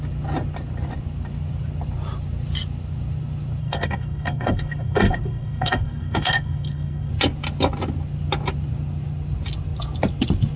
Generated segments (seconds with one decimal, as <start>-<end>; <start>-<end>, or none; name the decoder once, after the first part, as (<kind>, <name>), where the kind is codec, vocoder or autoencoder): 3.6-7.1 (codec, SNAC)